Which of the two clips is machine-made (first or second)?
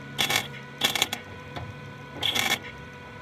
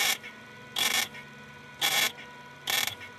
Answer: first